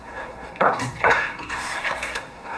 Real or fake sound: fake